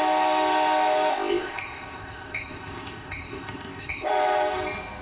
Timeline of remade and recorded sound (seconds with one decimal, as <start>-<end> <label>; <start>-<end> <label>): 0.0-1.1 recorded; 1.1-4.1 remade; 4.1-5.0 recorded